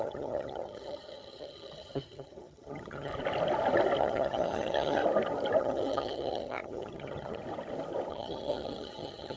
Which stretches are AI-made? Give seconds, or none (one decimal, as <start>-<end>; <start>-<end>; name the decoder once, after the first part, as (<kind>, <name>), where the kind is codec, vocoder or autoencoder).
0.0-3.1 (vocoder, HiFi-GAN); 4.0-5.0; 5.6-7.4; 8.1-9.4